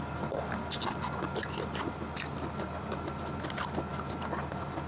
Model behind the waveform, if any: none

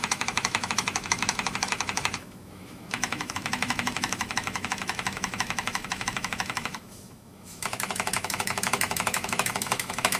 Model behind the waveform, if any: autoencoder, DAC-VAE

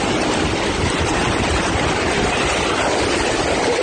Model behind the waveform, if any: none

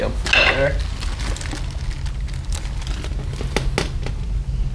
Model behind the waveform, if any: none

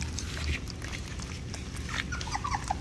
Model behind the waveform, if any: vocoder, BigVGAN v2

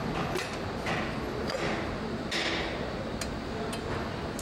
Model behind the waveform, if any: none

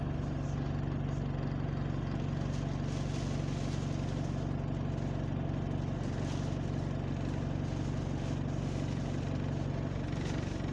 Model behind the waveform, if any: none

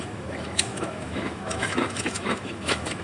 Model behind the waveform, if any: autoencoder, DAC-VAE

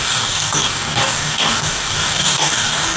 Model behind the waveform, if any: codec, DAC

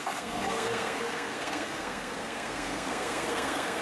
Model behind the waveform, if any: codec, SNAC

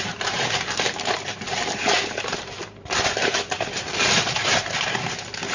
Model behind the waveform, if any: vocoder, BigVGAN v2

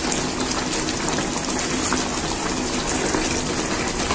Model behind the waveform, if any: none